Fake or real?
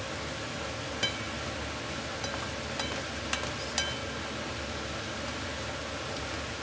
real